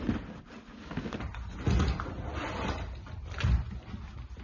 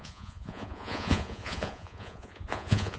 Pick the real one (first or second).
first